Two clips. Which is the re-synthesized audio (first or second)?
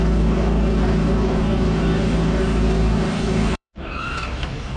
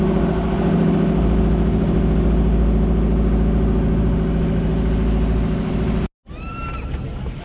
first